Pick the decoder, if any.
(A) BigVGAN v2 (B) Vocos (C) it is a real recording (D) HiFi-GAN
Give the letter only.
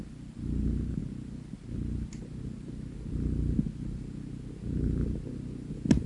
C